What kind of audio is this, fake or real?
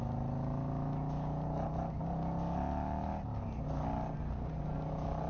real